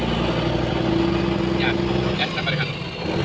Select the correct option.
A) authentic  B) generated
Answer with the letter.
A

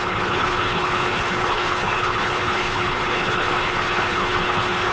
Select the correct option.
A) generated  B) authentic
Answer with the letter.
A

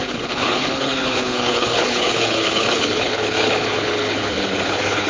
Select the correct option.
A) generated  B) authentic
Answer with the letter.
A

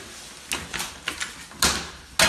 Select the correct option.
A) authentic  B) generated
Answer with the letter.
A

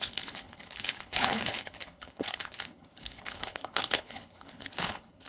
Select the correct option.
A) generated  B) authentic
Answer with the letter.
A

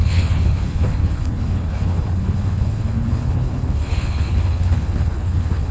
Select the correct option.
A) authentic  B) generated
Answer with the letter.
B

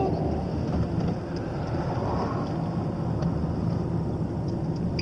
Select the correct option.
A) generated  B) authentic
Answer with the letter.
B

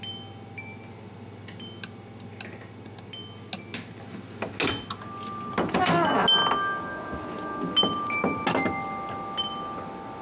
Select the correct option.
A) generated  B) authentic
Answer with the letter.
B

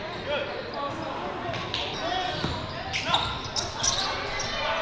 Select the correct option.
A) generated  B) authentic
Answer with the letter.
B